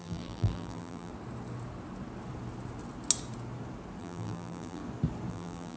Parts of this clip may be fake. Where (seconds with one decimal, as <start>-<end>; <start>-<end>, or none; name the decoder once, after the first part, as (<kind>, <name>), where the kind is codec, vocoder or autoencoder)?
0.0-1.1 (vocoder, BigVGAN v2); 4.0-4.8; 5.3-5.8